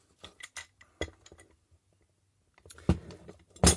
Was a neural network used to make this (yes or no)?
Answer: no